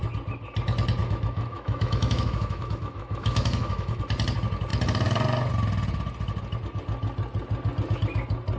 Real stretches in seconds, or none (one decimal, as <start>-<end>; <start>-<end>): 0.0-1.0; 4.0-8.6